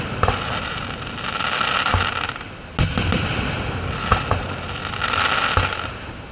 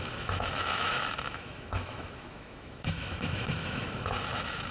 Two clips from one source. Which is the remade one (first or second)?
second